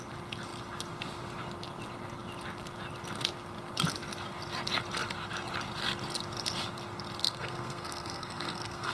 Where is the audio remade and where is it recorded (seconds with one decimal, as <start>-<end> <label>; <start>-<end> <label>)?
0.0-7.2 recorded; 7.2-8.9 remade